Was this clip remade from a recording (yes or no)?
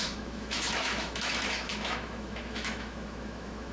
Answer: yes